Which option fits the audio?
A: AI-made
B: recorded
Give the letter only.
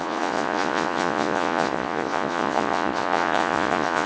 A